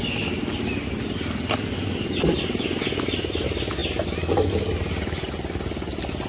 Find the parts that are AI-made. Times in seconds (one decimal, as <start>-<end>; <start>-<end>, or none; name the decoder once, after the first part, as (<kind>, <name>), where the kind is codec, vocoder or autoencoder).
none